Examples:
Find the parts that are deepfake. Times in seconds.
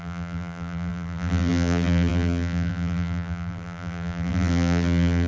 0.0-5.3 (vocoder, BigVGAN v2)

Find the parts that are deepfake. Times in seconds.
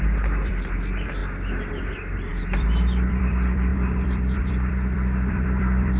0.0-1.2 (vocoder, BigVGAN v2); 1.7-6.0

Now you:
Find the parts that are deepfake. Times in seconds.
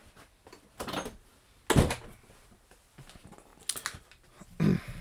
none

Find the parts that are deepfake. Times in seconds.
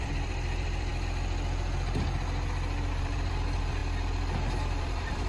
0.0-0.9 (vocoder, BigVGAN v2); 3.0-3.8; 4.8-5.3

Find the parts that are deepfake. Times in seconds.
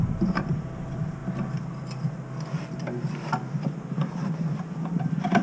0.0-1.2 (vocoder, BigVGAN v2); 3.9-5.4